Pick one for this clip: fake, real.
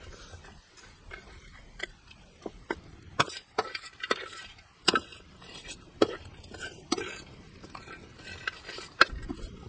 fake